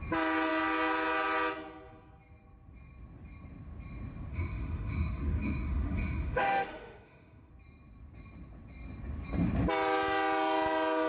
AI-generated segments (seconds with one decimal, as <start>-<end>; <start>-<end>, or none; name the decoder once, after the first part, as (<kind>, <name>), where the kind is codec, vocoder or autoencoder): 4.3-7.5 (autoencoder, DAC-VAE)